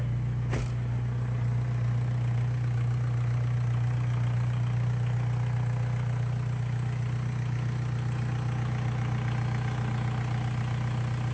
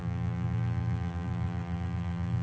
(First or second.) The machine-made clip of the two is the second